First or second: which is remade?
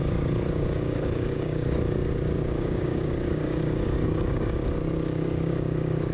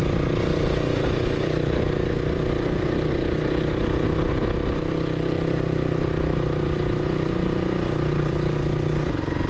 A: first